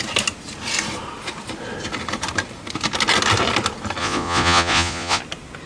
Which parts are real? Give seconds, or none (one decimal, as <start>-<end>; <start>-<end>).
0.0-4.0; 5.2-5.7